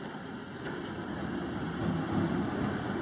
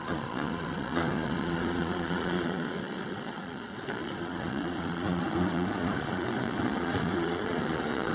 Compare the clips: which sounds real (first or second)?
first